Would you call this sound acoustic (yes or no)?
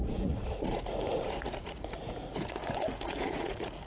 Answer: no